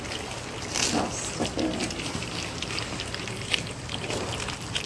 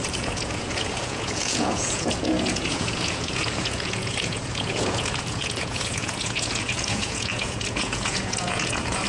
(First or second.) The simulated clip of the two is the second